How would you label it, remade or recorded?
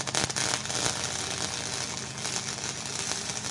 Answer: recorded